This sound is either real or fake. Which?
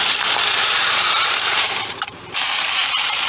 fake